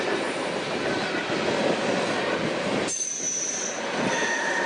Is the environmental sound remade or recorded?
recorded